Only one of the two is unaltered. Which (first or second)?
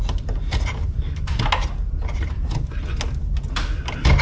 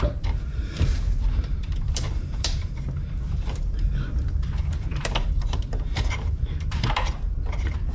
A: first